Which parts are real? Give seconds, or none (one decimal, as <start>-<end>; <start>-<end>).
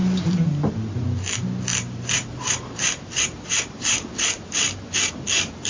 0.7-1.7; 5.1-5.7